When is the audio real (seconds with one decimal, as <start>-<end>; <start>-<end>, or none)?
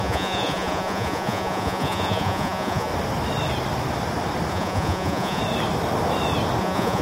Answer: 2.9-4.5; 5.4-6.6